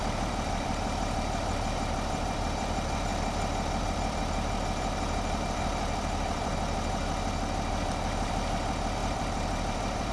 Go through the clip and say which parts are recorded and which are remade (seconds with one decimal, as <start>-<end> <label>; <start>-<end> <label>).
0.0-3.1 remade; 3.1-3.8 recorded; 3.8-7.0 remade; 7.0-7.7 recorded; 7.7-10.1 remade